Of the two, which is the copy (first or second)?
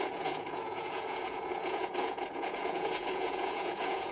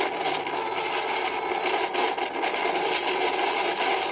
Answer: first